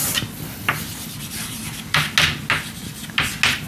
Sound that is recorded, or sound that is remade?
recorded